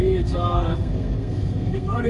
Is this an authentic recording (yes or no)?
no